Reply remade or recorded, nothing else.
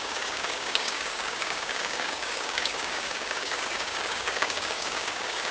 remade